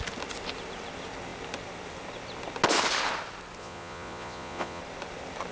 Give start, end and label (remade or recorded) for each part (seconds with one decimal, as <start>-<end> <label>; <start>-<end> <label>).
0.0-3.6 recorded; 3.6-4.8 remade; 4.8-5.5 recorded